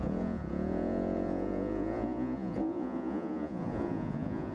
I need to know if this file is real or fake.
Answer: fake